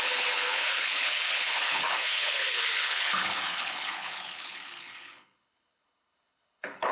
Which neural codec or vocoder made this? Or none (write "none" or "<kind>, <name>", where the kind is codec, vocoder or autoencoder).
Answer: codec, HILCodec